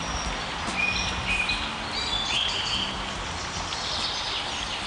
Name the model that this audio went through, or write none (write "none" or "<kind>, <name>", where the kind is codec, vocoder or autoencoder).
none